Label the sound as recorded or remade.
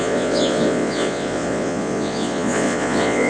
remade